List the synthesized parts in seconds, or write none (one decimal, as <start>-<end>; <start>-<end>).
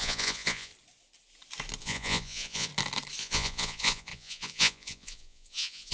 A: 0.0-0.7; 1.8-2.7; 3.2-5.9